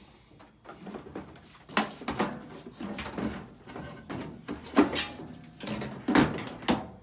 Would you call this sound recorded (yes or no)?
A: yes